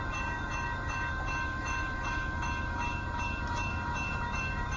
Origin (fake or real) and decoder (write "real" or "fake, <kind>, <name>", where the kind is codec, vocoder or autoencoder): fake, autoencoder, DAC-VAE